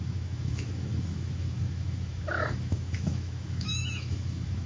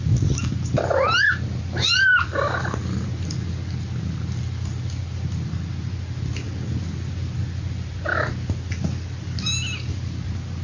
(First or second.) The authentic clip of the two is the second